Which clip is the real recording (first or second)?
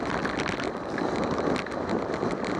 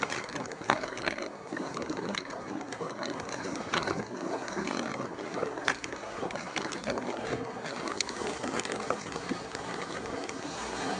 first